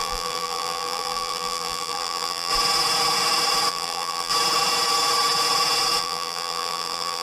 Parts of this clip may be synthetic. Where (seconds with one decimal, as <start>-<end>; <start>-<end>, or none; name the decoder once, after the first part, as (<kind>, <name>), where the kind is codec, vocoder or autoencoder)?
0.0-2.5 (vocoder, BigVGAN v2); 3.7-4.3; 6.0-7.2